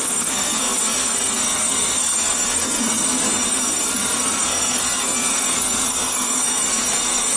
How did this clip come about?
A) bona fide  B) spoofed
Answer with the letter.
B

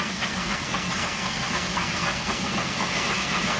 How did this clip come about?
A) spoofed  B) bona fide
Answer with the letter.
A